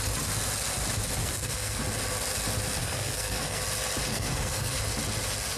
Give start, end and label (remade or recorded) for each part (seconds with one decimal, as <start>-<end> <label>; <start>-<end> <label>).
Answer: 0.0-1.2 recorded; 1.2-1.8 remade; 1.8-2.8 recorded; 2.8-3.6 remade; 3.6-4.1 recorded; 4.1-4.8 remade; 4.8-5.6 recorded